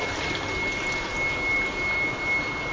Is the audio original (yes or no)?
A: yes